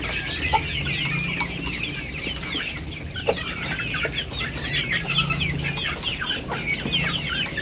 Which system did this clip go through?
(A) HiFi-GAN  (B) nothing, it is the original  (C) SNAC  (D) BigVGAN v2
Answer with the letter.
B